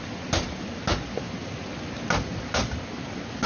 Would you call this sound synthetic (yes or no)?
no